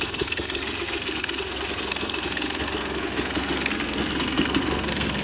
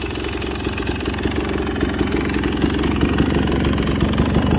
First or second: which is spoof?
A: first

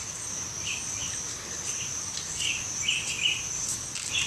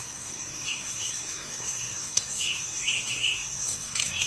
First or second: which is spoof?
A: second